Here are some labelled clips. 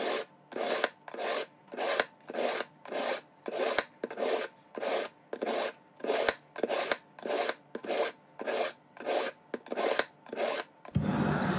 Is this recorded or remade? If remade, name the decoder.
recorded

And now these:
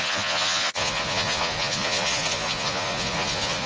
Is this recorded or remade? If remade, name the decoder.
remade, vocoder, Vocos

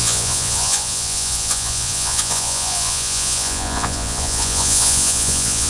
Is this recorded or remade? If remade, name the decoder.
remade, vocoder, Vocos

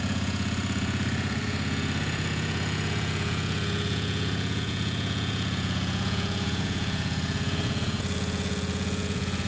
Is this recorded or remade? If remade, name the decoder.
remade, vocoder, Vocos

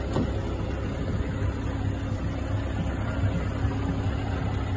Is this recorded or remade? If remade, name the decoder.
recorded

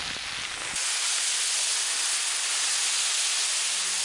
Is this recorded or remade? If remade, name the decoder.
recorded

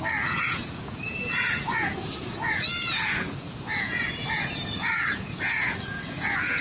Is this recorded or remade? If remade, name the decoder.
remade, vocoder, Vocos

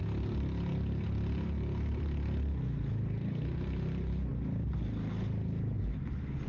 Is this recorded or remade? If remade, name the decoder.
recorded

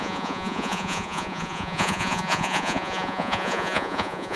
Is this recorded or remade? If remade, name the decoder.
remade, vocoder, Vocos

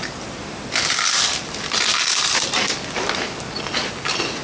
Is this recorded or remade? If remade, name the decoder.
recorded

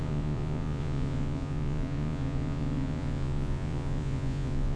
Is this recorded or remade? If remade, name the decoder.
remade, vocoder, Vocos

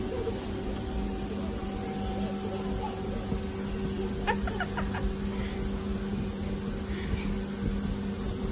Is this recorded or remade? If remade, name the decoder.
recorded